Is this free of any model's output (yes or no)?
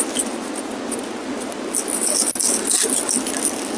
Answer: yes